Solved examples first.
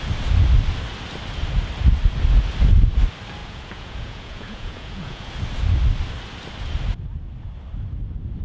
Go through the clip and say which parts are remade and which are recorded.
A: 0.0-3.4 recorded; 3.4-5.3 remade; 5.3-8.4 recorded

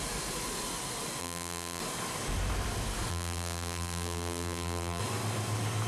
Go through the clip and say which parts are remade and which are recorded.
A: 0.0-1.2 recorded; 1.2-1.8 remade; 1.8-3.1 recorded; 3.1-5.0 remade; 5.0-5.9 recorded

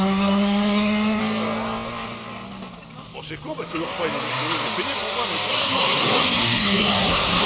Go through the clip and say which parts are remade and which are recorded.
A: 0.0-1.2 remade; 1.2-5.5 recorded; 5.5-7.5 remade